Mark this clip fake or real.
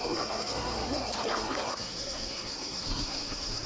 fake